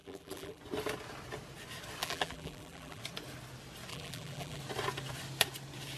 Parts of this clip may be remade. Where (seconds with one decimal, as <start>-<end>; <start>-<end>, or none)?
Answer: 0.0-0.6; 2.0-3.0; 3.9-4.6